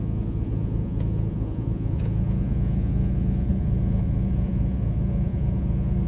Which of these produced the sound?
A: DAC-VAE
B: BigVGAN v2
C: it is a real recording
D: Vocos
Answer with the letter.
D